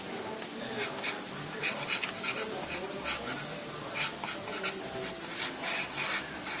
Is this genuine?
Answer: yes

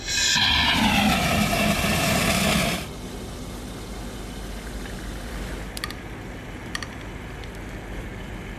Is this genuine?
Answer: yes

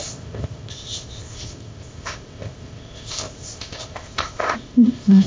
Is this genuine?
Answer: no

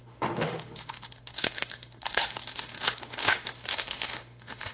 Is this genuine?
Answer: no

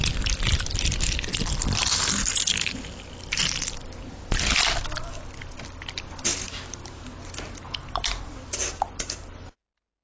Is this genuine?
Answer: yes